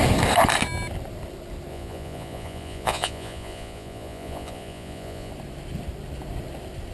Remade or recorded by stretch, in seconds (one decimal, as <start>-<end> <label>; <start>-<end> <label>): 0.0-1.7 recorded; 1.7-5.3 remade; 5.3-6.9 recorded